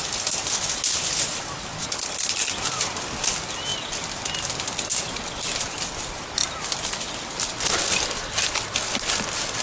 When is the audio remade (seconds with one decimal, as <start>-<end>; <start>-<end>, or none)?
none